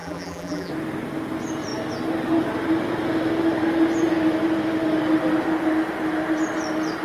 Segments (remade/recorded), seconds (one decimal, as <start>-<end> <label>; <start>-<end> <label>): 0.0-0.7 remade; 0.7-7.0 recorded